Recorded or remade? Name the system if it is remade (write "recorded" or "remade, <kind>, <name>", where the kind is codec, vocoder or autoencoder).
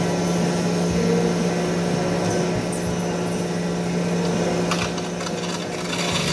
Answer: recorded